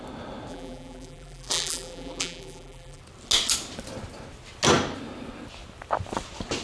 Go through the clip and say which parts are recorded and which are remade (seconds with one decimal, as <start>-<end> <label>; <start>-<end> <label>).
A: 0.0-0.5 recorded; 0.5-3.0 remade; 3.0-6.6 recorded